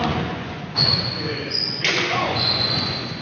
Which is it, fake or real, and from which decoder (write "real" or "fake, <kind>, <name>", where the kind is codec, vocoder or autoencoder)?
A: fake, vocoder, Vocos